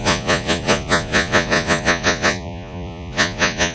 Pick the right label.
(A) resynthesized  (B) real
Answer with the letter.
A